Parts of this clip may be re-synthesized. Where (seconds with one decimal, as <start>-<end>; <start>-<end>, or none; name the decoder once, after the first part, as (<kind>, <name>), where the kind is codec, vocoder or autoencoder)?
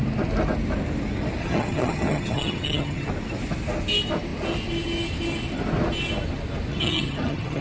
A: 1.4-3.1 (vocoder, HiFi-GAN); 6.7-7.6